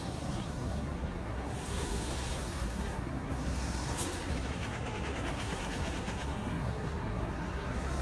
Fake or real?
fake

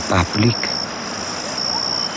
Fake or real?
real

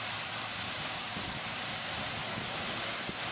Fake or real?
real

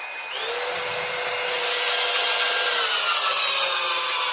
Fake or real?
real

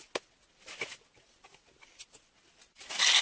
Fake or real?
real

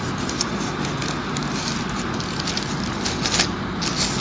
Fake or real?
real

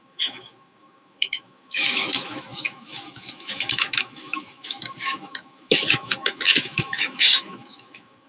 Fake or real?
fake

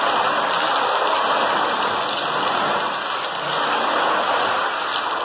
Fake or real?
real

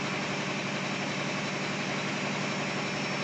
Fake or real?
real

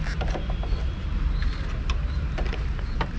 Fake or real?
real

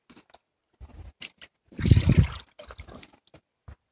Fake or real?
real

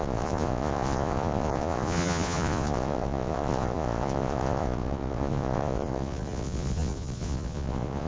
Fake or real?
fake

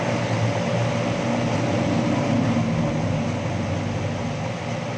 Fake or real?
real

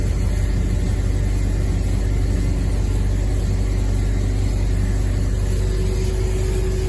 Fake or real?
real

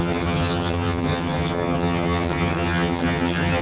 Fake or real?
fake